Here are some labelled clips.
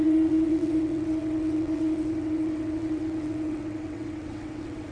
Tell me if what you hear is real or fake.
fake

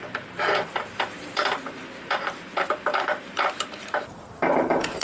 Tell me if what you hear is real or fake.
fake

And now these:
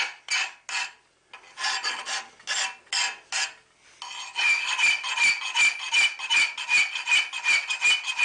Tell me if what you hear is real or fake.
real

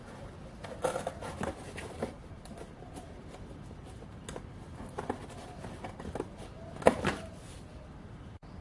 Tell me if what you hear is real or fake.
real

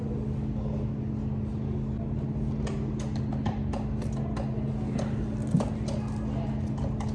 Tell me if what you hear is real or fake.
real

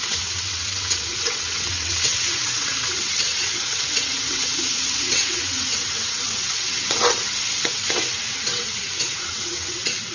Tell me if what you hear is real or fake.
fake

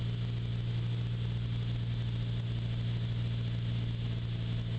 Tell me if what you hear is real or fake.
real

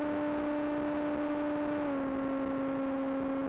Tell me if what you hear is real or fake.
real